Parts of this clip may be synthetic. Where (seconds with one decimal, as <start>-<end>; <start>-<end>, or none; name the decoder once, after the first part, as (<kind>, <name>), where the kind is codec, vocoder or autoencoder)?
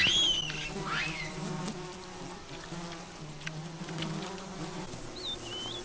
none